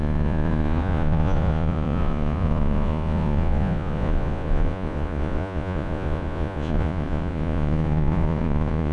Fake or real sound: fake